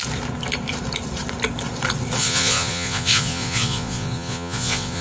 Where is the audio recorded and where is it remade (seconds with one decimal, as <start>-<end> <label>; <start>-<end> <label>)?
0.0-2.2 recorded; 2.2-5.0 remade